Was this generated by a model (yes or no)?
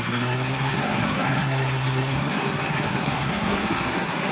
yes